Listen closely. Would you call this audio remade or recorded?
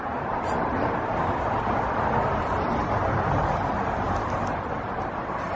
recorded